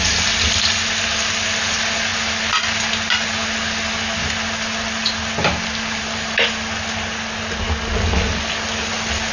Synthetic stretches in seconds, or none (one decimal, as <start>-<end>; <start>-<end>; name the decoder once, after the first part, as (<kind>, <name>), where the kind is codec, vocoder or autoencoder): none